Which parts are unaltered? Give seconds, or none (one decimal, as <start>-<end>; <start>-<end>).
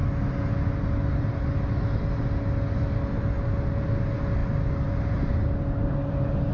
0.0-6.5